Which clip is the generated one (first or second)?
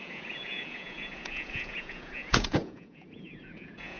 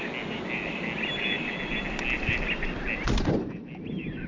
first